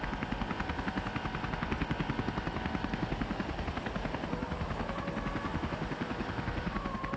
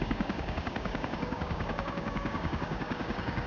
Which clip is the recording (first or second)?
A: first